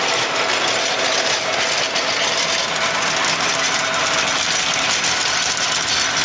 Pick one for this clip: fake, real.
real